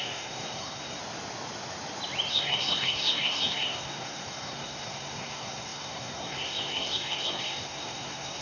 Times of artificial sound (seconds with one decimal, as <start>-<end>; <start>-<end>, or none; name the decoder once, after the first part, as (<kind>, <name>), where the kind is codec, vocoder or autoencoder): 0.0-1.0 (codec, SNAC); 2.3-8.4